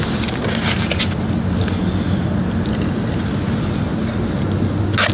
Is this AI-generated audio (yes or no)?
no